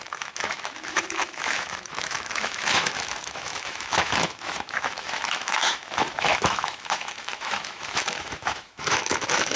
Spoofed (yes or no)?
yes